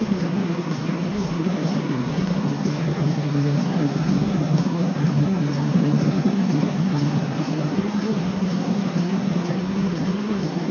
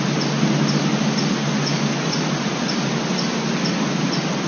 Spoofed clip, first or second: first